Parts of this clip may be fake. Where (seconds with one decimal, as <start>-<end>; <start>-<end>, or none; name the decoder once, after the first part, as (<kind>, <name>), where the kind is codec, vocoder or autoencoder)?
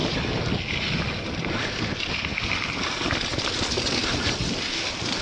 none